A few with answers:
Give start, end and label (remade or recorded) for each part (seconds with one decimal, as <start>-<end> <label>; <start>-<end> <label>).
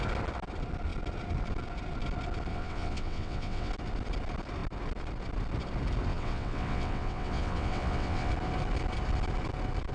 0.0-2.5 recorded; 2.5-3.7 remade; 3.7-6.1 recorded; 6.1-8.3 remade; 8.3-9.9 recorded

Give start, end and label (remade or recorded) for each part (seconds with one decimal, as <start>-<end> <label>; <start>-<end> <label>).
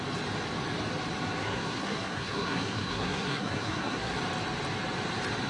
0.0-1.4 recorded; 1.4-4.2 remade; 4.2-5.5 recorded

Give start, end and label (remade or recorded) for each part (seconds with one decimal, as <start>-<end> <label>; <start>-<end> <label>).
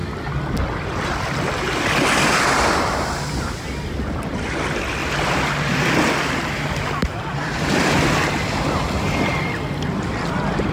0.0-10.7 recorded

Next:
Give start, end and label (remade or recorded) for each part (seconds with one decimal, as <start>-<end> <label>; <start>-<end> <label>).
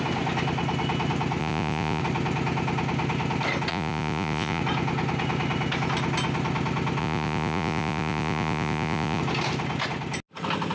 0.0-1.4 recorded; 1.4-2.0 remade; 2.0-3.7 recorded; 3.7-4.6 remade; 4.6-7.0 recorded; 7.0-9.2 remade; 9.2-10.7 recorded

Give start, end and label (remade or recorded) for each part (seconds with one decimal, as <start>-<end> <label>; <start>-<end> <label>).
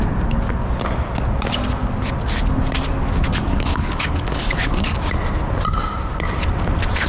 0.0-3.3 recorded; 3.3-5.0 remade; 5.0-7.1 recorded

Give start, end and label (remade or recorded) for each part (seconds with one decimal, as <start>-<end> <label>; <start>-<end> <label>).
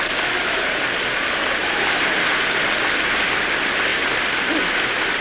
0.0-1.6 recorded; 1.6-2.7 remade; 2.7-5.2 recorded